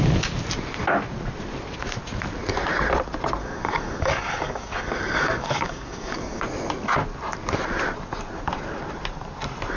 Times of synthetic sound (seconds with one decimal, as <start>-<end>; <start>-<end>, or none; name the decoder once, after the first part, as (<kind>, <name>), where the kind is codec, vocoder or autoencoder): 3.4-6.4 (codec, DAC)